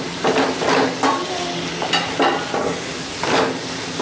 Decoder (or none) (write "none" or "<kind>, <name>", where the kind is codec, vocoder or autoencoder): none